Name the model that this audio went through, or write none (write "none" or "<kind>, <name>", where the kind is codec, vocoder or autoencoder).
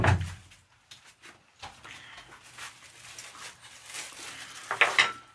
none